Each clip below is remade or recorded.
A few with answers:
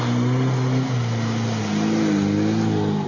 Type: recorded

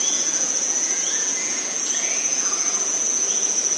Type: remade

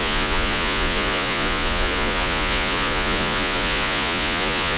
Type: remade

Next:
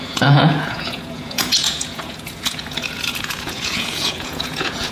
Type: remade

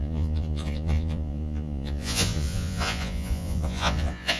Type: remade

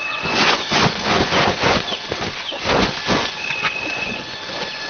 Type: remade